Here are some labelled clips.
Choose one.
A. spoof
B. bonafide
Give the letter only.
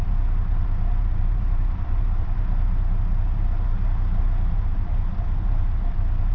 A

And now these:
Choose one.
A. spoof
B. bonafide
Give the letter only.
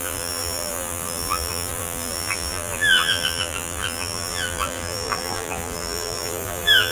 A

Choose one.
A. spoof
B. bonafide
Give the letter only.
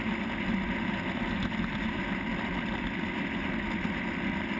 A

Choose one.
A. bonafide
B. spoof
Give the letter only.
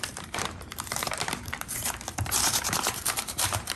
B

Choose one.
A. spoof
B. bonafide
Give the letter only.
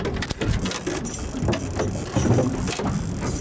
B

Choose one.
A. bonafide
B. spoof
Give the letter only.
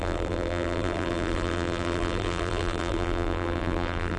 B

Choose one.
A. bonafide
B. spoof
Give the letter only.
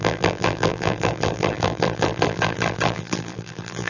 B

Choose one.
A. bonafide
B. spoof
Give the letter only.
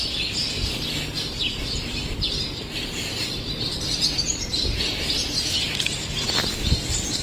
A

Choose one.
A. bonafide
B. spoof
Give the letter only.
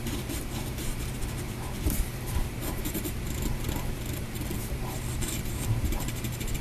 B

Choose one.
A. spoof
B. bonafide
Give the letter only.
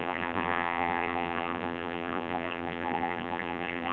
A